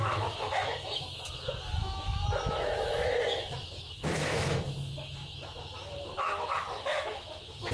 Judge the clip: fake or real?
fake